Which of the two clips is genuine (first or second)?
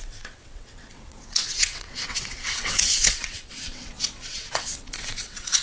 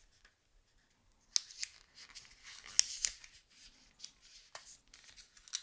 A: second